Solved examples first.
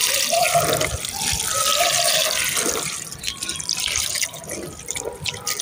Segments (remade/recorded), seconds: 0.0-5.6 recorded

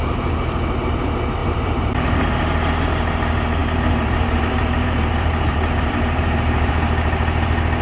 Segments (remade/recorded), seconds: 0.0-1.4 recorded; 1.4-2.2 remade; 2.2-3.6 recorded; 3.6-6.7 remade; 6.7-7.8 recorded

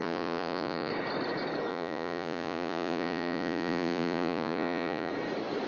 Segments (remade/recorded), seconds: 0.0-0.9 remade; 0.9-1.7 recorded; 1.7-5.1 remade; 5.1-5.7 recorded

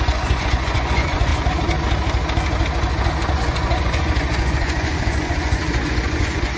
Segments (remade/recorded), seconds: 0.0-1.3 remade; 1.3-3.3 recorded; 3.3-6.6 remade